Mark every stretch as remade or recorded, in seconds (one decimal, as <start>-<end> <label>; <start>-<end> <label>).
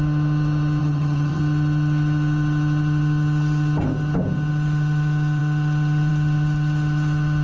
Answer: 0.0-0.8 recorded; 0.8-1.4 remade; 1.4-7.4 recorded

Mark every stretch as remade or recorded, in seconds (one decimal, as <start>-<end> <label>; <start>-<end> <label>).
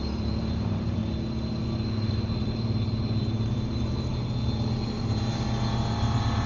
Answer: 0.0-1.0 remade; 1.0-2.1 recorded; 2.1-4.1 remade; 4.1-5.0 recorded; 5.0-6.5 remade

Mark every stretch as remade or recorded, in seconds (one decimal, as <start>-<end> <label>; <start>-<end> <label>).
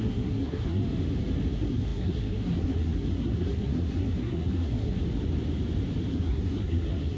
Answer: 0.0-0.8 remade; 0.8-1.5 recorded; 1.5-5.0 remade; 5.0-6.1 recorded; 6.1-7.2 remade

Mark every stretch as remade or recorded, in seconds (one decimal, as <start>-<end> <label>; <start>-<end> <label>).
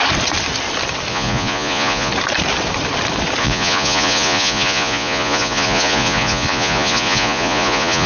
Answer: 0.0-1.1 recorded; 1.1-2.1 remade; 2.1-3.4 recorded; 3.4-8.1 remade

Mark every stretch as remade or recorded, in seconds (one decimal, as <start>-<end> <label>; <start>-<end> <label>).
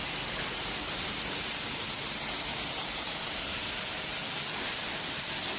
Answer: 0.0-4.1 remade; 4.1-4.8 recorded; 4.8-5.6 remade